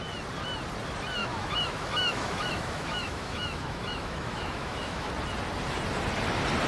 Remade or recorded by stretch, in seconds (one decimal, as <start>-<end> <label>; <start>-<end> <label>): 0.0-1.2 recorded; 1.2-5.1 remade; 5.1-6.7 recorded